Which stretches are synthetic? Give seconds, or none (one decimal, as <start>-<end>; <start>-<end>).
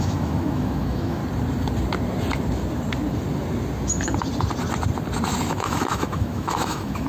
0.0-1.2; 5.5-7.1